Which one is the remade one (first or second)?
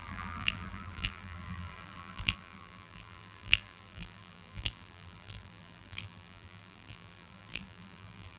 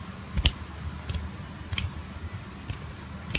first